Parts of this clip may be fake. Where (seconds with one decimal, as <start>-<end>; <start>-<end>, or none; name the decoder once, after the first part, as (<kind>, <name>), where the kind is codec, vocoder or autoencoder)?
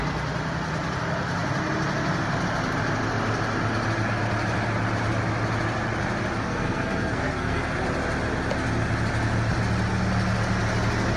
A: 6.4-7.6 (codec, SNAC)